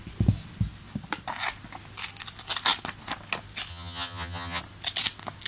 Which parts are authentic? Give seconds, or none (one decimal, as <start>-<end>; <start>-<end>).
0.0-3.7; 4.6-5.5